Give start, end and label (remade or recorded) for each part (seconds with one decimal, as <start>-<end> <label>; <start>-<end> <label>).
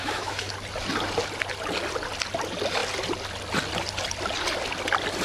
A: 0.0-0.5 remade; 0.5-5.2 recorded